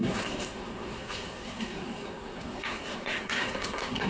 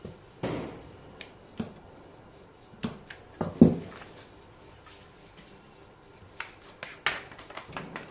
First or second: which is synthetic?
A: first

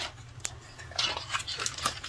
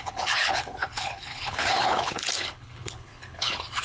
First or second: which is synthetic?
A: second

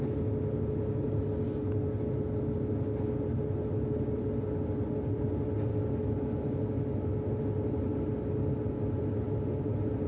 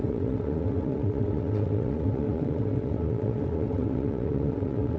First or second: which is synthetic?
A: second